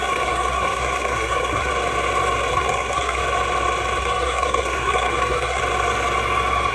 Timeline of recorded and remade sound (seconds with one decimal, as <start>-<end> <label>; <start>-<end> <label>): 0.0-1.7 remade; 1.7-2.5 recorded; 2.5-3.2 remade; 3.2-4.0 recorded; 4.0-5.6 remade; 5.6-6.7 recorded